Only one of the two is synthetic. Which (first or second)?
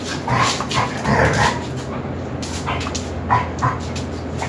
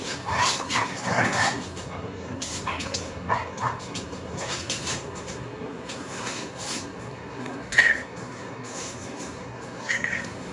second